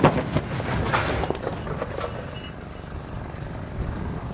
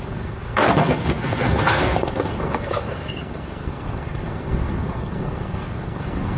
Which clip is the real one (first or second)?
first